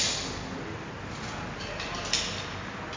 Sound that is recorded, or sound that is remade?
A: recorded